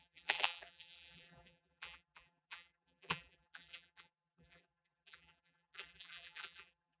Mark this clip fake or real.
fake